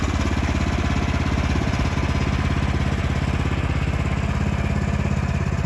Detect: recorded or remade recorded